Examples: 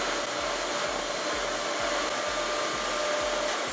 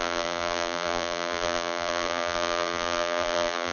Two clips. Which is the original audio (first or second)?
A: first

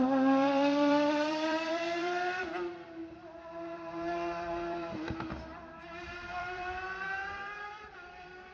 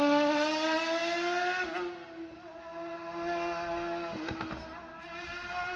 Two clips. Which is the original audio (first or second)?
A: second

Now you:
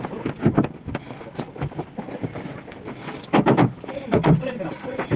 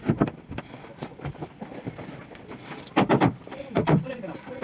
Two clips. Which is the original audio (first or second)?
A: first